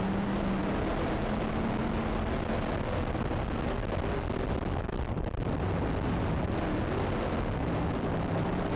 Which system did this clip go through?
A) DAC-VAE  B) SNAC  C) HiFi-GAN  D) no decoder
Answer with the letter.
D